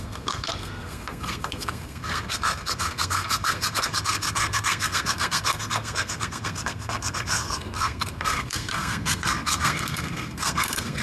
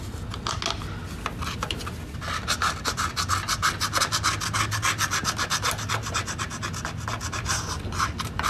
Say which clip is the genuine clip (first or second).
second